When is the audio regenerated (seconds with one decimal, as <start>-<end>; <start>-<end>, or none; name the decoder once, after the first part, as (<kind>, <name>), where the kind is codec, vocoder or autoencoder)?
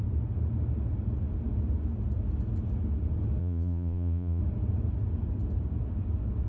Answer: 3.4-4.4 (vocoder, Vocos)